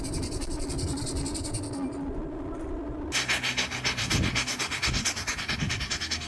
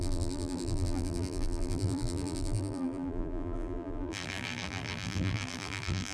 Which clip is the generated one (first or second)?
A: second